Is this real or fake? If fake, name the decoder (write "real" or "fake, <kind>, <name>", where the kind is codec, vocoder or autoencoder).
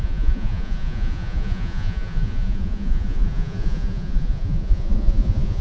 fake, vocoder, Vocos